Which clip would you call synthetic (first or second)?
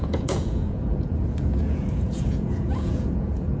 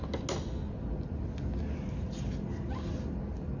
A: first